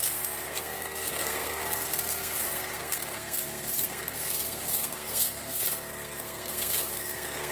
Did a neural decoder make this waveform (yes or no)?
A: yes